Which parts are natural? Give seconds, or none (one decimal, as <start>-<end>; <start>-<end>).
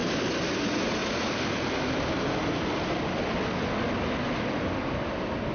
0.0-5.5